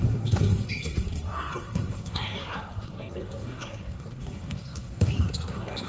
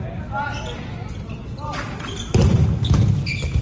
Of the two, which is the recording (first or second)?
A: second